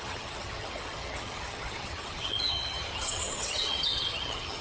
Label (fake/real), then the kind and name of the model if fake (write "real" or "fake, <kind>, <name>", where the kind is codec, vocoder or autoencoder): fake, vocoder, HiFi-GAN